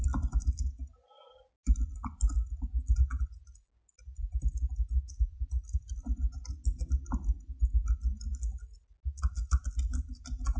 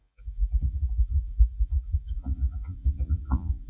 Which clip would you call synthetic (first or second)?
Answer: second